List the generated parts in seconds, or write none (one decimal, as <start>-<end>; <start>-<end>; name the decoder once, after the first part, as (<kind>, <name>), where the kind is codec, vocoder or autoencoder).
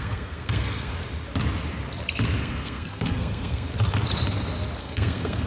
0.0-1.0 (codec, SNAC); 2.4-3.7; 4.8-5.5